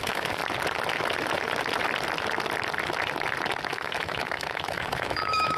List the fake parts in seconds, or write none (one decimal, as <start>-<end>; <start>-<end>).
0.0-0.4; 3.7-5.6